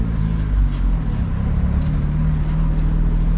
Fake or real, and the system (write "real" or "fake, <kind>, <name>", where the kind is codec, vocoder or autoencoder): real